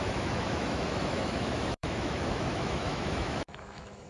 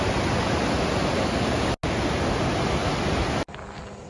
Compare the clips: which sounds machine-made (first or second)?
first